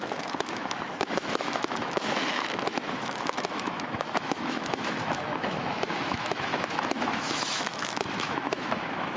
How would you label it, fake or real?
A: fake